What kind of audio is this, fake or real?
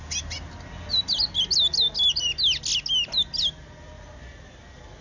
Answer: real